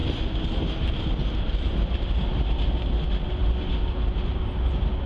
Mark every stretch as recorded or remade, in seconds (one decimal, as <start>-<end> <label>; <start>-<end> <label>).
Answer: 0.0-5.1 recorded